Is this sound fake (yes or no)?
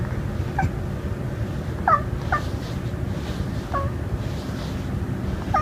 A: no